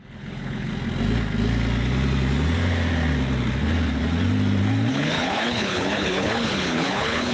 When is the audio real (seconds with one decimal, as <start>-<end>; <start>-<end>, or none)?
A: 0.7-4.9